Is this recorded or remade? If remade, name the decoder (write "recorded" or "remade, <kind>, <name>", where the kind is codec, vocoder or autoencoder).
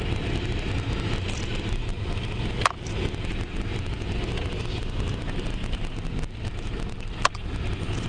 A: recorded